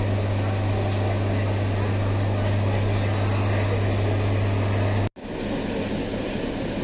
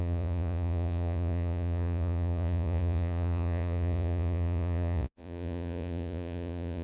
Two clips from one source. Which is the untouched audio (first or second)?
first